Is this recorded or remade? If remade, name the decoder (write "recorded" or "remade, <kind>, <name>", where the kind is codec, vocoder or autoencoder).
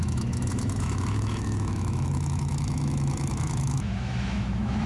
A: remade, autoencoder, DAC-VAE